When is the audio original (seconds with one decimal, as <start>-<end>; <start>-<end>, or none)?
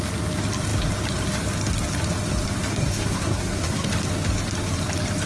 0.0-2.7; 3.9-5.3